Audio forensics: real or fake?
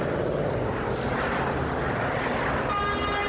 real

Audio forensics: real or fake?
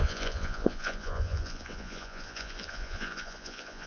fake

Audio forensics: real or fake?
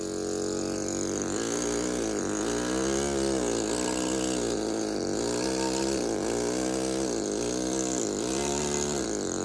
real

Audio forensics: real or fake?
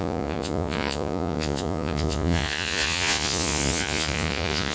fake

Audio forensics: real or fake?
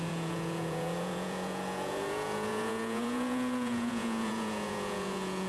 fake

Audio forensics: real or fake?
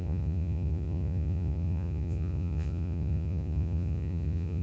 fake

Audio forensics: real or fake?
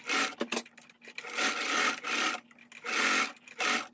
real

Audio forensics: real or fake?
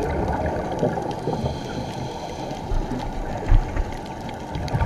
real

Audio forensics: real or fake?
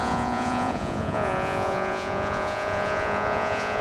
fake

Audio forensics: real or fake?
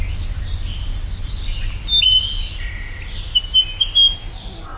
real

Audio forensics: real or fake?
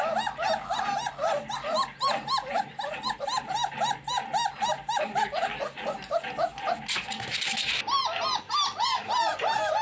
real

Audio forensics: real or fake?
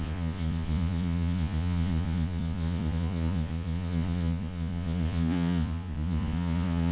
fake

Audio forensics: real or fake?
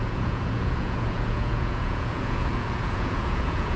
fake